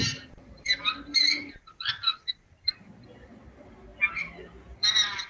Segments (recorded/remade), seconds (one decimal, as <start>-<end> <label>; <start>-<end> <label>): 0.0-5.3 remade